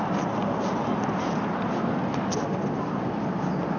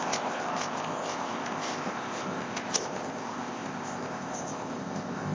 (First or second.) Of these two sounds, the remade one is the second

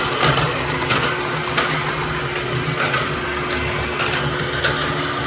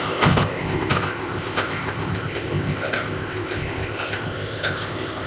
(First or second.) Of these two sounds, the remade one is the second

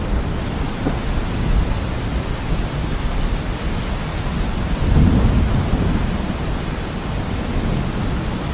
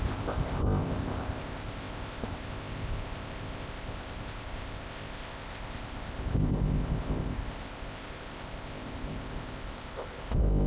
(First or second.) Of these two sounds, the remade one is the second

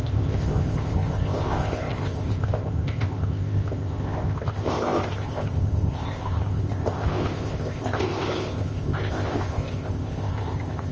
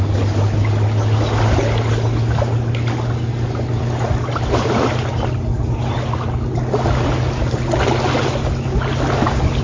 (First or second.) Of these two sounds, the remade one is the first